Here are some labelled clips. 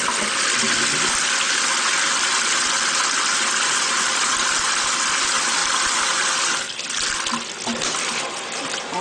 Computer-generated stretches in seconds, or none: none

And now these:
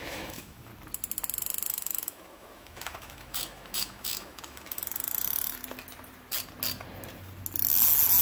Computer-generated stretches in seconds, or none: 0.0-0.7 (autoencoder, DAC-VAE); 1.7-5.5

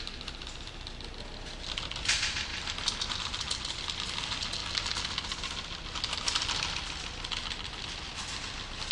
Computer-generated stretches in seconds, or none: none

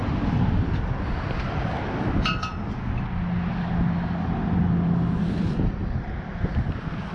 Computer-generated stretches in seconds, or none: none

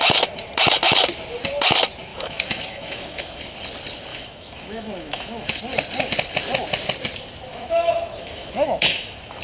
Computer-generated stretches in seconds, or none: 2.1-3.4 (autoencoder, DAC-VAE); 4.1-5.6; 7.5-9.4

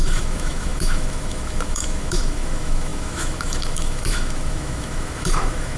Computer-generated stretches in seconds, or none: 0.0-5.8 (autoencoder, DAC-VAE)